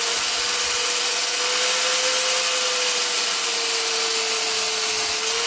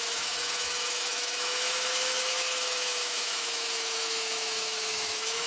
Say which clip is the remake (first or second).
second